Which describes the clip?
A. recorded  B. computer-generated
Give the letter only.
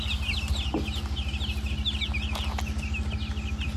A